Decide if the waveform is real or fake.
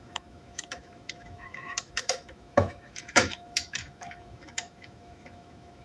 fake